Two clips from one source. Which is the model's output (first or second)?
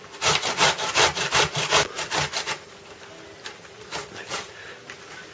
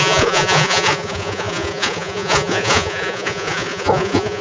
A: second